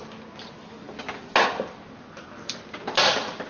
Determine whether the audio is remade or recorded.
recorded